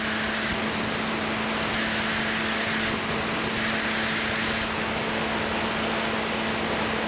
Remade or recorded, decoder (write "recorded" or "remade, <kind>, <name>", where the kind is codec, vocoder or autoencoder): recorded